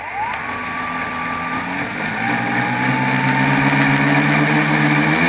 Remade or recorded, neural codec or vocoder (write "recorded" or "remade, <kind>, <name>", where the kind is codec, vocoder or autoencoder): recorded